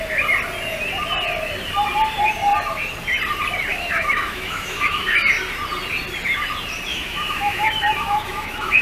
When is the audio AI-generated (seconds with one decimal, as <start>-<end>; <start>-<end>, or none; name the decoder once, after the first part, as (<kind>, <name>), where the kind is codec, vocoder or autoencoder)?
3.7-5.1 (autoencoder, DAC-VAE); 6.9-8.8